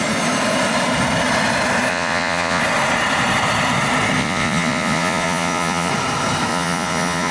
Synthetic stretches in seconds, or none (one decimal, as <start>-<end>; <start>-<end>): 1.9-2.6; 4.2-5.9; 6.5-7.3